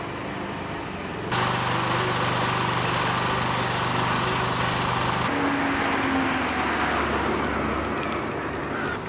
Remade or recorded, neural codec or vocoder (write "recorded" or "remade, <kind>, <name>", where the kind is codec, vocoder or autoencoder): recorded